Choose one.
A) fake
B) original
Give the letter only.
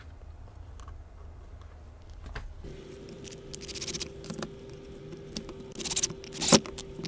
B